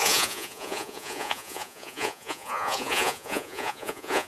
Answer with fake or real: fake